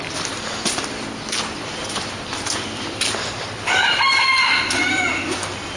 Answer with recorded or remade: recorded